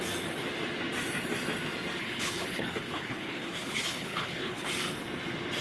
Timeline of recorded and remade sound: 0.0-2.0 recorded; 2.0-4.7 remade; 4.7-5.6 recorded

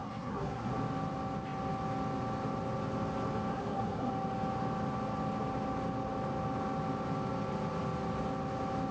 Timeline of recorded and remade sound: 0.0-0.7 remade; 0.7-3.5 recorded; 3.5-4.1 remade; 4.1-8.9 recorded

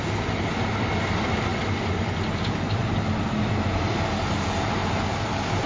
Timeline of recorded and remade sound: 0.0-5.7 recorded

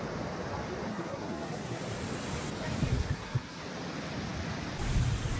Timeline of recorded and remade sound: 0.0-0.9 recorded; 0.9-1.8 remade; 1.8-2.9 recorded; 2.9-3.6 remade; 3.6-5.4 recorded

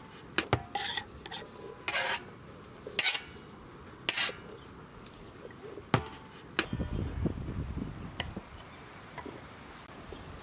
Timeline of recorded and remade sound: 0.0-4.9 recorded; 4.9-5.4 remade; 5.4-10.4 recorded

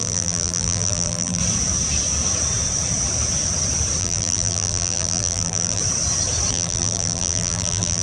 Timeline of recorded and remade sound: 0.0-1.4 remade; 1.4-4.0 recorded; 4.0-5.8 remade; 5.8-6.5 recorded; 6.5-8.0 remade